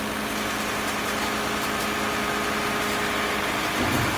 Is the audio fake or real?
real